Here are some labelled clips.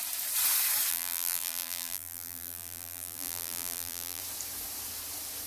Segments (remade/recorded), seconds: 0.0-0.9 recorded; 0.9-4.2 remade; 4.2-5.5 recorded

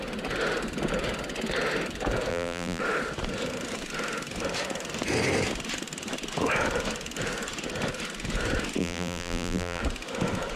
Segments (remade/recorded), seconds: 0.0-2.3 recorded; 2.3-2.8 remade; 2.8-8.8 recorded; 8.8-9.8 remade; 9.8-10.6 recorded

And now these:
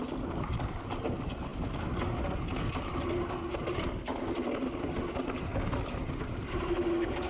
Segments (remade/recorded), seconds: 0.0-7.3 recorded

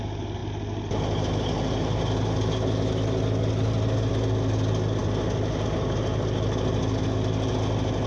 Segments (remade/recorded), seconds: 0.0-8.1 recorded

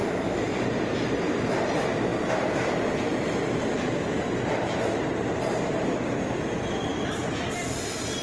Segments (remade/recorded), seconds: 0.0-8.2 recorded

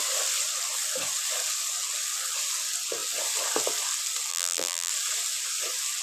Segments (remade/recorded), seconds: 0.0-4.3 recorded; 4.3-4.9 remade; 4.9-6.0 recorded

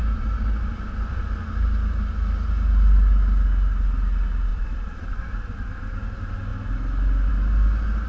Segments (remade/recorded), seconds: 0.0-1.2 remade; 1.2-4.5 recorded; 4.5-5.8 remade; 5.8-8.1 recorded

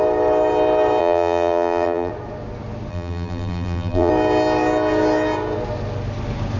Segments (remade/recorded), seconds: 0.0-1.0 recorded; 1.0-2.1 remade; 2.1-2.9 recorded; 2.9-4.1 remade; 4.1-6.6 recorded